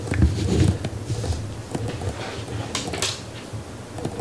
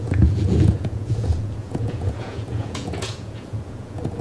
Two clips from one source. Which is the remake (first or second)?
second